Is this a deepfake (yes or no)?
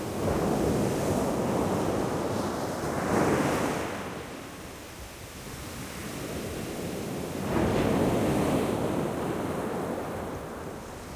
no